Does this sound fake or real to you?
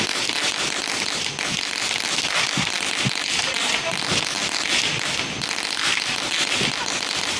real